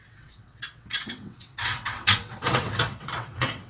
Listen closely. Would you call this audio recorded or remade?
remade